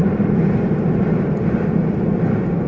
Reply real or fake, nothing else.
real